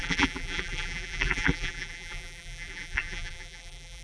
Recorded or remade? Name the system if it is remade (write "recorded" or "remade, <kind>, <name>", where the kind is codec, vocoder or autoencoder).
remade, vocoder, BigVGAN v2